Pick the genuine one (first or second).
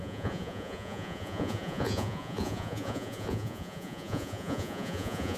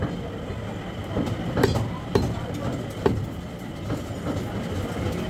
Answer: second